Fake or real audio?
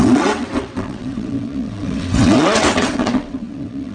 fake